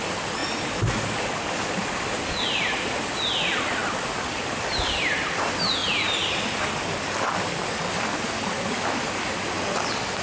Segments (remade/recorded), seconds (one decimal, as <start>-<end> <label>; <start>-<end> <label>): 0.0-10.2 recorded